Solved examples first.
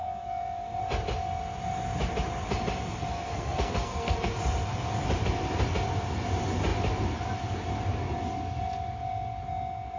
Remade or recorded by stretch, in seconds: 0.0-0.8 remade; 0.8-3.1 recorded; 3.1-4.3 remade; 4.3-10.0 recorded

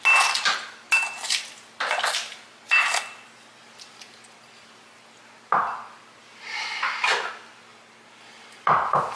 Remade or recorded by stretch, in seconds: 0.0-9.2 recorded

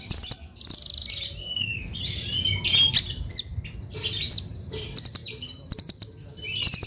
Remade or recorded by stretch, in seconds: 0.0-1.4 recorded; 1.4-2.0 remade; 2.0-6.9 recorded

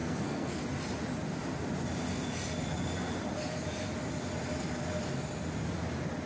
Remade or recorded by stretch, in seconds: 0.0-0.6 remade; 0.6-6.3 recorded

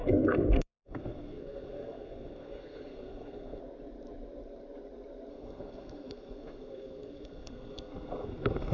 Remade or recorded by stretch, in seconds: 0.0-3.6 remade; 3.6-5.3 recorded; 5.3-8.7 remade